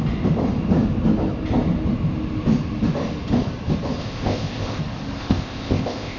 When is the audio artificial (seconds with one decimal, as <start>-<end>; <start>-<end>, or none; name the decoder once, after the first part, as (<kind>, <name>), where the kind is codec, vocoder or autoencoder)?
4.0-4.8 (codec, ZipCodec); 5.2-6.2